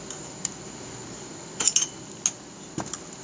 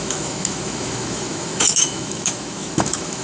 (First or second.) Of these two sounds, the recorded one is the first